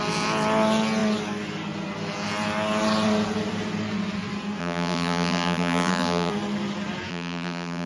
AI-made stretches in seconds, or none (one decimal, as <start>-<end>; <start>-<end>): 4.6-6.3; 7.1-7.9

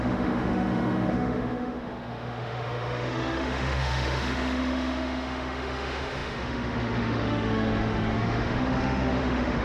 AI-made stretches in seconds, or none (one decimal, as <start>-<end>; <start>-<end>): 0.0-9.6

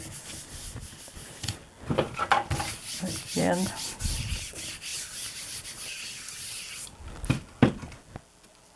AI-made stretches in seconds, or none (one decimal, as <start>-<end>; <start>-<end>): none

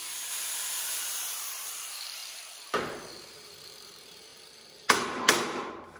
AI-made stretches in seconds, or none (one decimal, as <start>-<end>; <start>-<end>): 0.7-2.2; 3.3-6.0

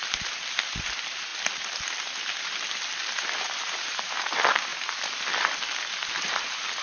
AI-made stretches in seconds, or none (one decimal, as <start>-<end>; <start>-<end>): 0.7-1.3; 3.0-4.7; 6.1-6.8